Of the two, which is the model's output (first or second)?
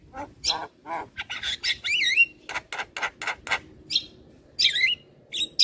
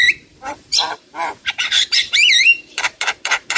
second